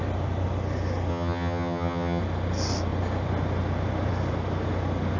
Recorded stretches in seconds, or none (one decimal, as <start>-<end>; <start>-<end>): 0.0-1.1; 2.2-5.2